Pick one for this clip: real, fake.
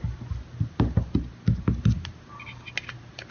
real